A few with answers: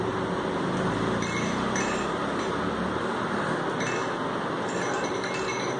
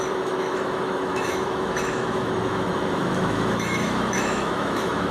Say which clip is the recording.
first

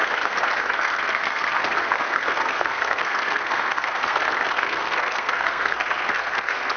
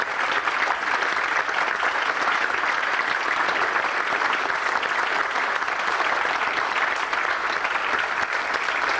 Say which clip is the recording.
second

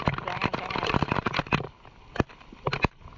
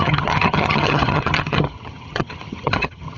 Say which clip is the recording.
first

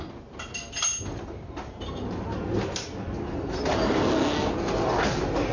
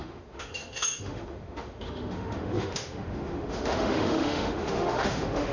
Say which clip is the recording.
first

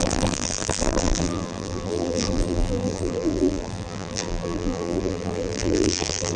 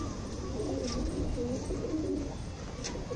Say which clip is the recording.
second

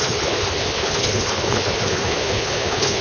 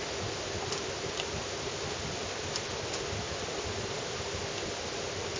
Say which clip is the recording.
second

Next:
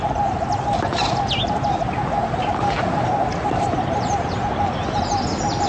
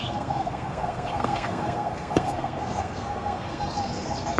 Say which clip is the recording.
first